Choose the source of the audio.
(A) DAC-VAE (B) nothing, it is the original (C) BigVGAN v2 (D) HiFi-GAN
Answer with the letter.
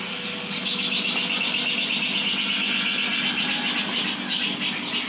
B